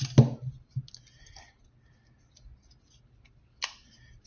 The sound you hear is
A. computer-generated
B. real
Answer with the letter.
B